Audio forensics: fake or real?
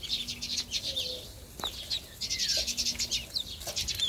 real